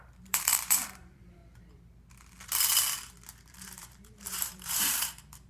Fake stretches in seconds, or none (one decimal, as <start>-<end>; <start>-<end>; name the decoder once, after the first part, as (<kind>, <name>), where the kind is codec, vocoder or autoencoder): 0.0-1.4 (vocoder, BigVGAN v2); 3.5-5.5